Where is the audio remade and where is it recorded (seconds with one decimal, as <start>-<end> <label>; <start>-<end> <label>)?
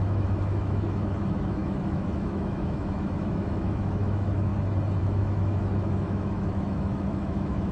0.0-4.5 remade; 4.5-5.0 recorded; 5.0-7.7 remade